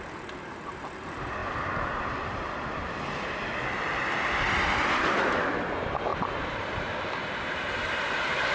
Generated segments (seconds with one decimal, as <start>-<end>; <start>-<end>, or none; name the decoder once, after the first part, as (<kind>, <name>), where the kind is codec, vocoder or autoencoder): 6.1-8.5 (vocoder, BigVGAN v2)